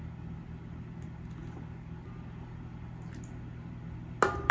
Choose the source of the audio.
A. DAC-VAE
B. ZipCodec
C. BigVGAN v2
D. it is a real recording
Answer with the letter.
D